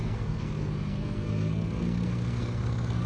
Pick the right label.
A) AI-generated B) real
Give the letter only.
A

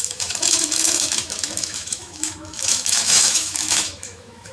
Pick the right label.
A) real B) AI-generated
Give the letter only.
B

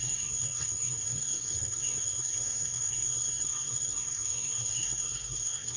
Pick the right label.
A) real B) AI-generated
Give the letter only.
B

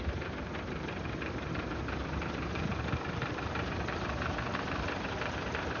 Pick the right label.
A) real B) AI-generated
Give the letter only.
B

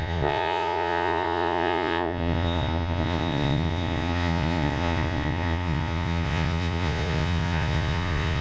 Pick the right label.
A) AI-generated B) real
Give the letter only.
A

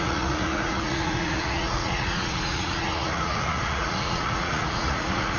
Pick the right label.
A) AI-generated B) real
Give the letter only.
A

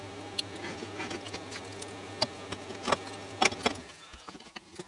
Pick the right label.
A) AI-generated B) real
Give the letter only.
B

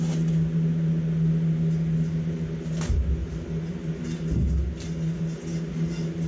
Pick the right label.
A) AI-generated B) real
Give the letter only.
B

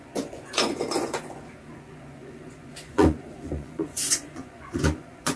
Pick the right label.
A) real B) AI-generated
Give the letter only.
B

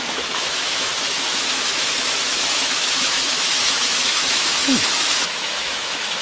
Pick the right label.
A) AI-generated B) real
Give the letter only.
A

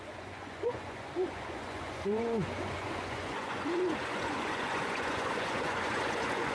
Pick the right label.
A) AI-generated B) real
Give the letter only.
A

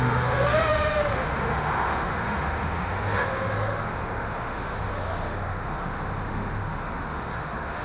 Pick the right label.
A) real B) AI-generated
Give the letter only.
B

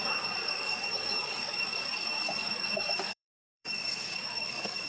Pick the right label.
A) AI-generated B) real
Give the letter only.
A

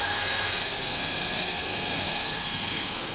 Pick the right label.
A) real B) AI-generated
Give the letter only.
B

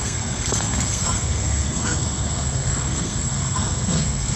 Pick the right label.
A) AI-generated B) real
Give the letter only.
A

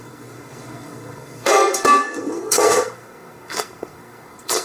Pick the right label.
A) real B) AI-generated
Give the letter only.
B